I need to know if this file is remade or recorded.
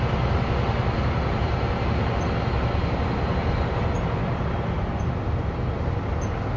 recorded